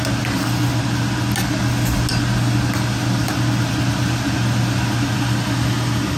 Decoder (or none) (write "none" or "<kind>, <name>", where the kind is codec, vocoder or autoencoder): none